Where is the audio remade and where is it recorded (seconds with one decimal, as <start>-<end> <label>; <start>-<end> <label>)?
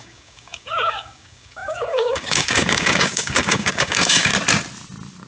0.0-4.3 remade; 4.3-5.3 recorded